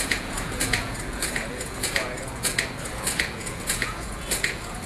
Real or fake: fake